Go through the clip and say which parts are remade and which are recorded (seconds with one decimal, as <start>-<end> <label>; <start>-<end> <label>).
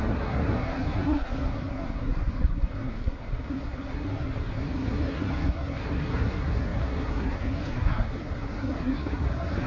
0.0-9.7 remade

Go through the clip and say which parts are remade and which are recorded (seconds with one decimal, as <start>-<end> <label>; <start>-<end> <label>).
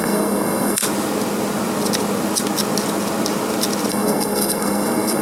0.0-0.8 remade; 0.8-3.9 recorded; 3.9-5.2 remade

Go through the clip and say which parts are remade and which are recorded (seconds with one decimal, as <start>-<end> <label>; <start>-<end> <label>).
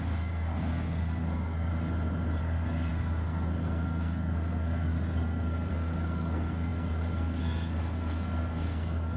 0.0-1.7 remade; 1.7-2.4 recorded; 2.4-9.2 remade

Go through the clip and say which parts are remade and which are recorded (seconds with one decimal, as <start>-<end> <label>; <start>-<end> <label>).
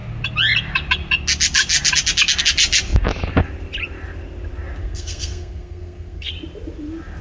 0.0-4.8 recorded; 4.8-6.3 remade; 6.3-7.2 recorded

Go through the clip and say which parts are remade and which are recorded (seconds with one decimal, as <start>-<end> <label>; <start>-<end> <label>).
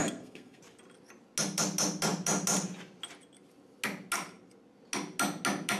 0.0-0.6 remade; 0.6-5.8 recorded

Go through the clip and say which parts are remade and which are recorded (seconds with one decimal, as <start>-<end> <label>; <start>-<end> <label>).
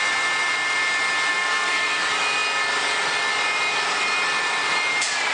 0.0-1.3 recorded; 1.3-2.0 remade; 2.0-5.3 recorded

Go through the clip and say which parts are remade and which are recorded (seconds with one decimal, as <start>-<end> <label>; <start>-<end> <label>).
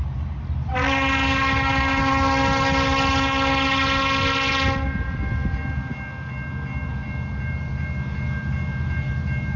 0.0-9.6 recorded